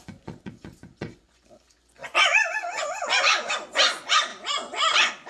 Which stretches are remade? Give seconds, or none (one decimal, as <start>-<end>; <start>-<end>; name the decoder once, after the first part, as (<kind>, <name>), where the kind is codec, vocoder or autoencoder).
0.0-5.3 (vocoder, Vocos)